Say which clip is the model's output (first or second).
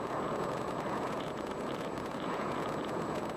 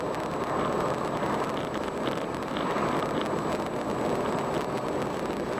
first